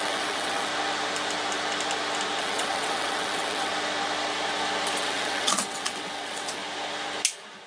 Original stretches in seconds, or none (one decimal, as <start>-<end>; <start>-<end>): 0.7-2.4; 3.7-5.0; 6.6-7.7